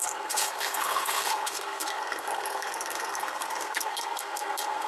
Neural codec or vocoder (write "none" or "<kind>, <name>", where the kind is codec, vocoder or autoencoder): codec, SNAC